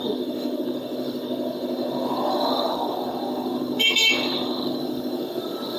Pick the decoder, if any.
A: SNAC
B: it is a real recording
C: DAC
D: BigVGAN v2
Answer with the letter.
C